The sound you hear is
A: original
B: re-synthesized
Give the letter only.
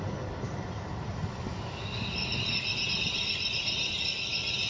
A